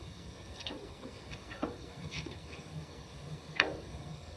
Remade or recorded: remade